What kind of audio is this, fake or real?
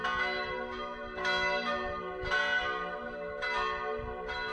real